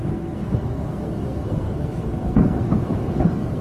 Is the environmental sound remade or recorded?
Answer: remade